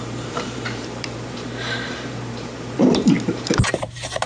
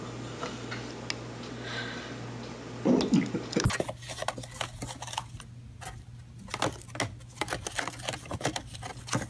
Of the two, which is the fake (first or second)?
first